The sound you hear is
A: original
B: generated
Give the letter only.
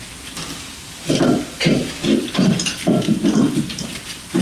A